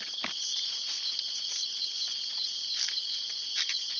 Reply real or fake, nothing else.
real